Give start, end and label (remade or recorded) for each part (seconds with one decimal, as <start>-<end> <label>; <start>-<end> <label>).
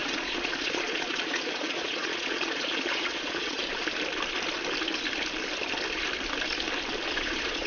0.0-3.6 remade; 3.6-7.1 recorded; 7.1-7.7 remade